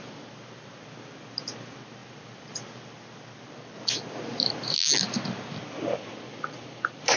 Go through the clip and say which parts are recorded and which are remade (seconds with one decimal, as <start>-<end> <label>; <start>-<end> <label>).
0.0-7.2 recorded